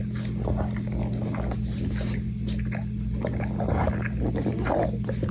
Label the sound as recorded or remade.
recorded